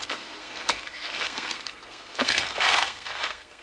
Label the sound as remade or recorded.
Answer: remade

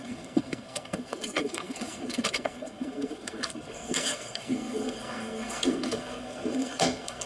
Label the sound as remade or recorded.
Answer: remade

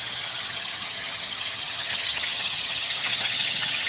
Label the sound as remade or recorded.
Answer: remade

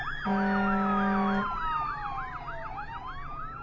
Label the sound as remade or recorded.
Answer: recorded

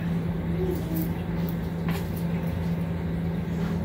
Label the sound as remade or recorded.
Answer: recorded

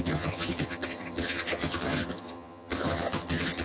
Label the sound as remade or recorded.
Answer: remade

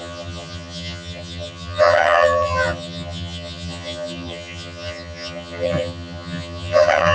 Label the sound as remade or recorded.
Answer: remade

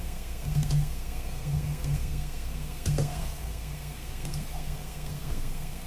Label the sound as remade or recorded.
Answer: remade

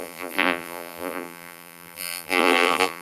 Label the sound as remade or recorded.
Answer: remade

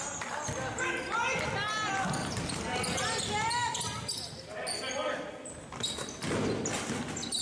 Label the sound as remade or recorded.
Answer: recorded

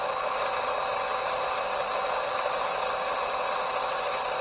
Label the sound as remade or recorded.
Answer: recorded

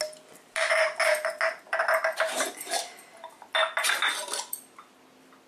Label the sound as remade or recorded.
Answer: recorded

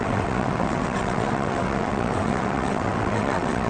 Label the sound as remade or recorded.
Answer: remade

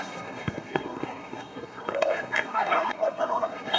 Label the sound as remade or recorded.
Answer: remade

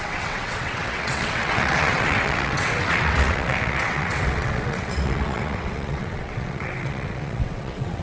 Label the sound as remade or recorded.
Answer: remade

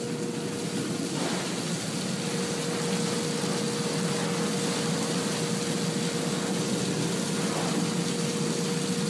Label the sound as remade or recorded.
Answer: recorded